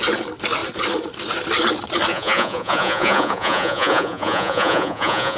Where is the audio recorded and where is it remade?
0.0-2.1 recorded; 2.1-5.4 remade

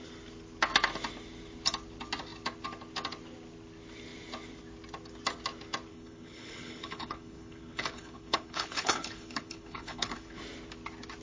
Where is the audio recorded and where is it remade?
0.0-5.9 recorded; 5.9-10.4 remade; 10.4-11.2 recorded

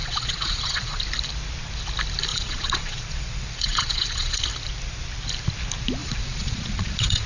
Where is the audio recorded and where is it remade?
0.0-1.0 remade; 1.0-2.3 recorded; 2.3-4.4 remade; 4.4-6.0 recorded; 6.0-7.3 remade

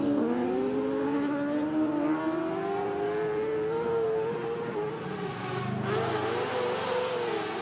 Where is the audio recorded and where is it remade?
0.0-7.6 recorded

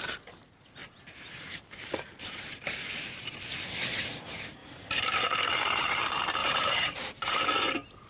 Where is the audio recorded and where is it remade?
0.0-0.8 recorded; 0.8-2.2 remade; 2.2-4.6 recorded; 4.6-5.9 remade; 5.9-6.4 recorded; 6.4-7.4 remade; 7.4-8.1 recorded

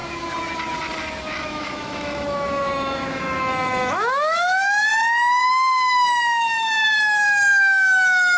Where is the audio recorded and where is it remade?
0.0-1.4 recorded; 1.4-4.9 remade; 4.9-5.5 recorded; 5.5-8.4 remade

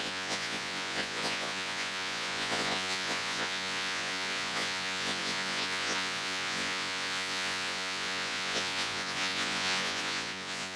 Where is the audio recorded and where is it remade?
0.0-10.8 remade

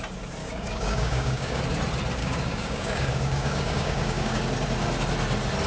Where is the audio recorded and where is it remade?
0.0-0.4 recorded; 0.4-1.6 remade; 1.6-2.2 recorded; 2.2-4.4 remade; 4.4-5.7 recorded